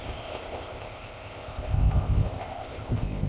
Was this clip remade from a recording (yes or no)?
yes